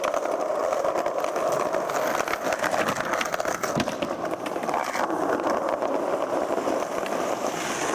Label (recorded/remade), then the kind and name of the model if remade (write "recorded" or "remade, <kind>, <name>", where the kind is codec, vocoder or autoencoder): recorded